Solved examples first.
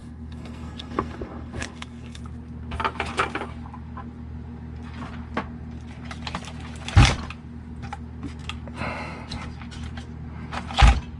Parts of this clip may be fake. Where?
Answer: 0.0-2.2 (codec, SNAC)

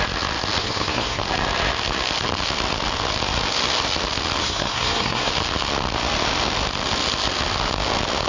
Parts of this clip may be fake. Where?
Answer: 0.6-1.2 (codec, SNAC); 4.4-5.3

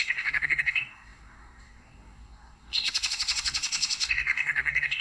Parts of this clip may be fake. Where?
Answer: 0.0-5.0 (codec, SNAC)

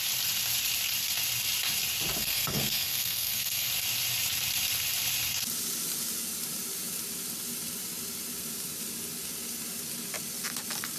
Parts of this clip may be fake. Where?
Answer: 2.2-3.7 (codec, SNAC)

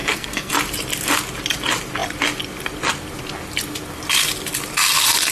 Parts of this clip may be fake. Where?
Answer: 0.0-0.5 (codec, SNAC)

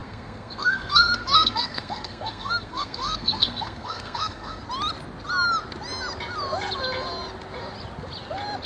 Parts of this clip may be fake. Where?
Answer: 0.0-4.6 (codec, SNAC)

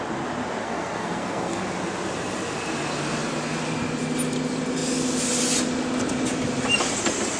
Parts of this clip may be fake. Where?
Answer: 0.6-1.6 (codec, SNAC)